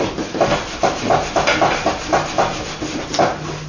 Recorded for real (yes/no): yes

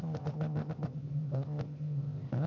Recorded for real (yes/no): no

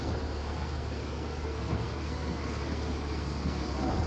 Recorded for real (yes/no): no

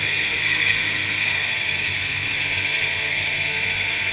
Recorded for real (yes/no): no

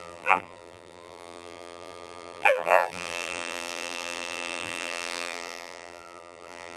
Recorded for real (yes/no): no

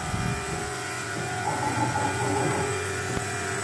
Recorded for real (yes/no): no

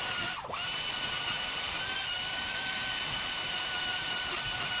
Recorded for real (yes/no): yes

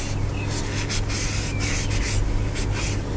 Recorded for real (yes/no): yes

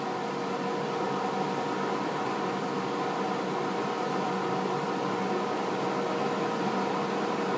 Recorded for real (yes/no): yes